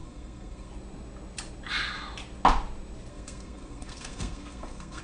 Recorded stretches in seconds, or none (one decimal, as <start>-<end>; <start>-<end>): 0.7-3.1